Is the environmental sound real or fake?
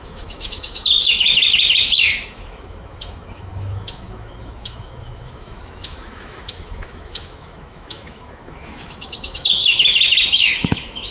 fake